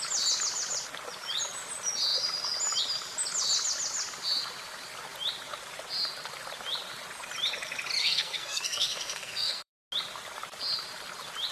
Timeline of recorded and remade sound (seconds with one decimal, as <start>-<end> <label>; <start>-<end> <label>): 0.0-8.0 recorded; 8.0-9.7 remade; 9.7-11.5 recorded